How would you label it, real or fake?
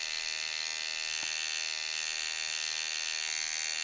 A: real